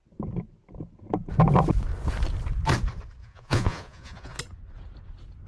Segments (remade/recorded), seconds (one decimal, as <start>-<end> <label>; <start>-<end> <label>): 0.0-3.2 recorded; 3.2-4.4 remade; 4.4-5.5 recorded

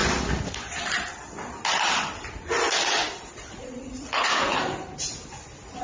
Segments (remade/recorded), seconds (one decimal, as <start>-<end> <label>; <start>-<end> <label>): 0.0-3.5 recorded; 3.5-4.5 remade; 4.5-5.8 recorded

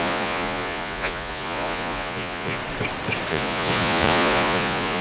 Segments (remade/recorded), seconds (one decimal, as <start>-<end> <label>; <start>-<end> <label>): 0.0-2.6 remade; 2.6-3.3 recorded; 3.3-5.0 remade

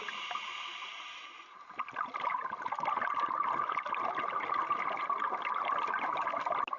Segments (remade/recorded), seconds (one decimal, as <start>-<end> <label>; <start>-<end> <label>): 0.0-6.8 recorded